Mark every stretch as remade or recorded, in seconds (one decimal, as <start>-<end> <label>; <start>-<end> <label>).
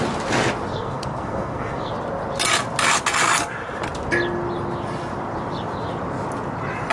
0.0-0.7 recorded; 0.7-1.9 remade; 1.9-6.9 recorded